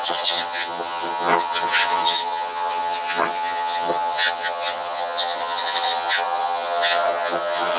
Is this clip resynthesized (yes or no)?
yes